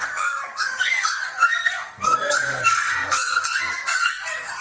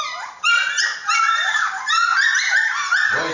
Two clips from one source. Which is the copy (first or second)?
first